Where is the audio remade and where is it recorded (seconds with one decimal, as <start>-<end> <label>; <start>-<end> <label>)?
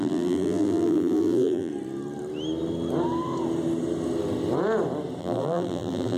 0.0-1.7 remade; 1.7-5.2 recorded; 5.2-6.2 remade